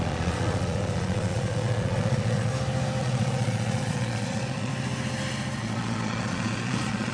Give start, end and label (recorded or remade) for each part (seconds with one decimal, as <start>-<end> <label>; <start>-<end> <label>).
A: 0.0-2.5 remade; 2.5-3.0 recorded; 3.0-4.7 remade; 4.7-5.6 recorded; 5.6-7.1 remade